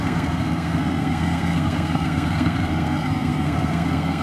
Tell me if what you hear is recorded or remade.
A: remade